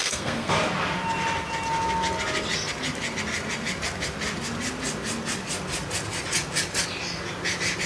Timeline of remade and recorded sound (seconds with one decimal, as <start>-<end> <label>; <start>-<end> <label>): 0.0-0.5 remade; 0.5-7.9 recorded